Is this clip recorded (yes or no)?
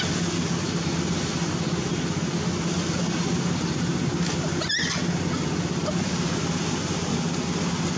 yes